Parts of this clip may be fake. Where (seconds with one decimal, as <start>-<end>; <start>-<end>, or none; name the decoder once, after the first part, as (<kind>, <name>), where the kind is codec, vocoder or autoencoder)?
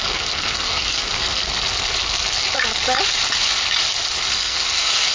0.0-1.4 (codec, SNAC); 4.3-5.1